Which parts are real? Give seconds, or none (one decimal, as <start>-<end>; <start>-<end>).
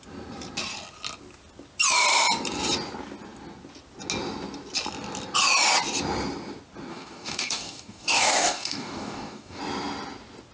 0.0-6.9; 9.6-10.5